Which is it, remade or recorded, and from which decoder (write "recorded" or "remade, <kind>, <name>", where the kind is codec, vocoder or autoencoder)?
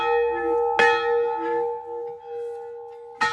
recorded